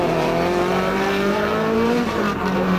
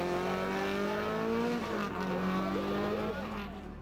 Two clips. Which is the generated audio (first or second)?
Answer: first